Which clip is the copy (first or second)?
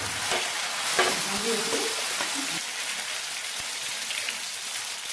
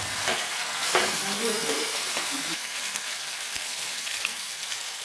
second